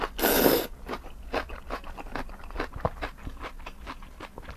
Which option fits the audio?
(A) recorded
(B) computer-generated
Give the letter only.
A